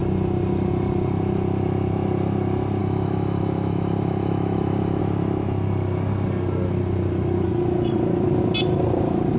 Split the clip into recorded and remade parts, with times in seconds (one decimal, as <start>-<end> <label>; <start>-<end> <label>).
0.0-2.8 recorded; 2.8-5.0 remade; 5.0-9.4 recorded